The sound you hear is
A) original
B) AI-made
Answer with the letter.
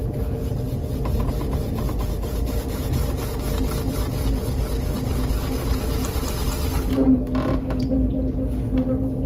A